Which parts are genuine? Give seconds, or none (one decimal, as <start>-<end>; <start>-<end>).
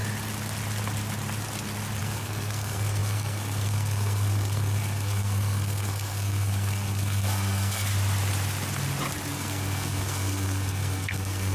0.0-2.0; 7.9-9.3